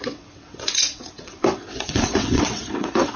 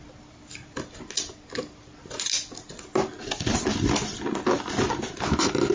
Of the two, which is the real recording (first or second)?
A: second